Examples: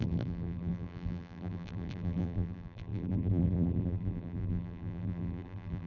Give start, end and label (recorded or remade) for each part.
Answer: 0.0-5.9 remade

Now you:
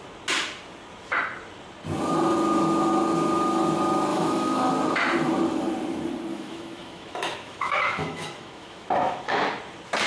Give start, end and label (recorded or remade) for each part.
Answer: 0.0-4.1 recorded; 4.1-4.7 remade; 4.7-6.3 recorded; 6.3-9.4 remade; 9.4-10.1 recorded

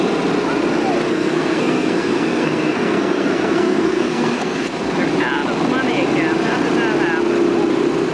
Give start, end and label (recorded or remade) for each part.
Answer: 0.0-1.1 recorded; 1.1-4.9 remade; 4.9-8.1 recorded

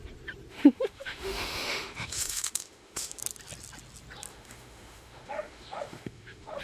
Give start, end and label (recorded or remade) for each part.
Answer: 0.0-0.5 recorded; 0.5-3.2 remade; 3.2-4.3 recorded; 4.3-6.6 remade

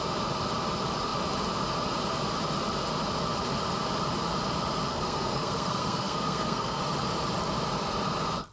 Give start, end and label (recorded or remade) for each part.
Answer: 0.0-4.9 recorded; 4.9-6.8 remade; 6.8-8.5 recorded

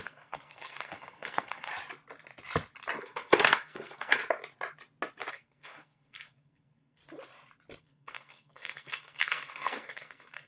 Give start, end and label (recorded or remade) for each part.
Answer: 0.0-1.7 remade; 1.7-3.0 recorded; 3.0-4.2 remade; 4.2-5.3 recorded; 5.3-7.0 remade; 7.0-7.8 recorded; 7.8-10.5 remade